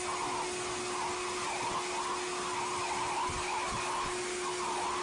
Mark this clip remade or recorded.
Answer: recorded